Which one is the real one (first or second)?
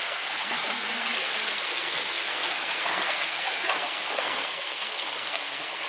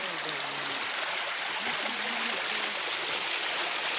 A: second